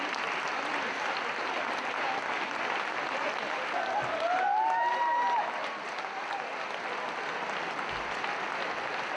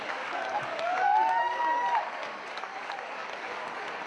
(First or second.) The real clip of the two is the first